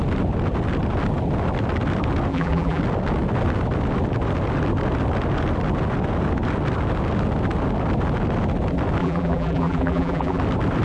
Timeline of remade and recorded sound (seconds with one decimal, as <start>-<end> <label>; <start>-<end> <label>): 0.0-2.3 recorded; 2.3-2.8 remade; 2.8-9.0 recorded; 9.0-10.4 remade; 10.4-10.8 recorded